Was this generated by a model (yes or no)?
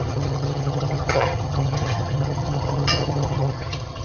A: yes